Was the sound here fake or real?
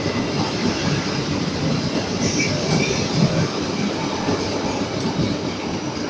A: real